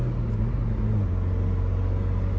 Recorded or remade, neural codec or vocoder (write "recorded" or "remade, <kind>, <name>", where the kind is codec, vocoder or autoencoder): recorded